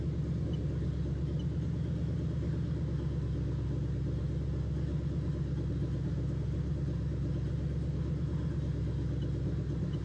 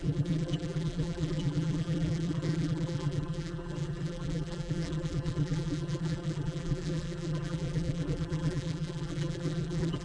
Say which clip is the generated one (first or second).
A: second